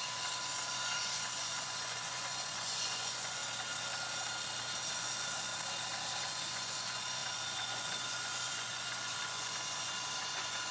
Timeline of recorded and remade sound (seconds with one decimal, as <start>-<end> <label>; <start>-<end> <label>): 0.0-3.4 remade; 3.4-4.9 recorded; 4.9-5.5 remade; 5.5-6.2 recorded; 6.2-10.7 remade